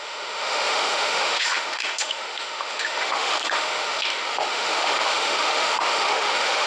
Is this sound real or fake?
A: fake